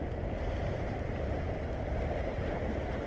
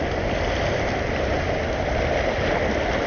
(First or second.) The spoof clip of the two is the first